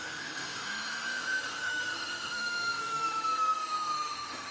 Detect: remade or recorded remade